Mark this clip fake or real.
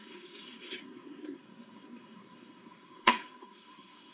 fake